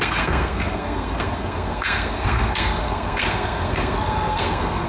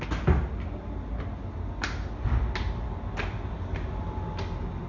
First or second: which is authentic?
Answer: second